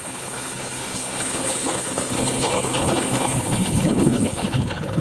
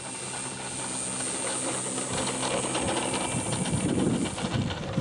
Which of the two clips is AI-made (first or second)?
first